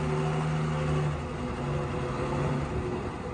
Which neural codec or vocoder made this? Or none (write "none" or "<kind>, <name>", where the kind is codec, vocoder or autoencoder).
none